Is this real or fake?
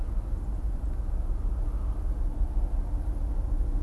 real